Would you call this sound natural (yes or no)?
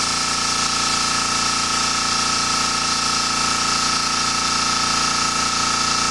yes